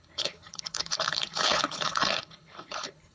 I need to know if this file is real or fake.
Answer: fake